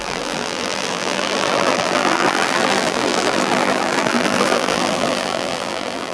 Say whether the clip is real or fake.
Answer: fake